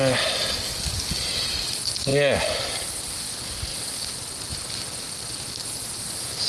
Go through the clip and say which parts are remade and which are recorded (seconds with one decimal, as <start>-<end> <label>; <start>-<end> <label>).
0.0-6.5 recorded